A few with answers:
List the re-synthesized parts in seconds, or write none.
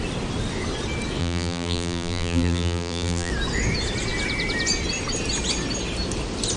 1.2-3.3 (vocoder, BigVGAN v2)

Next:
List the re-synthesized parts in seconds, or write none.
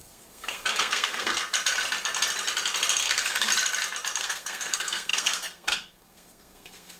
0.0-1.4 (codec, SNAC); 3.0-3.5; 4.2-7.0